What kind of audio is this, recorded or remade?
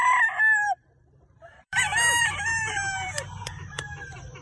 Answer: remade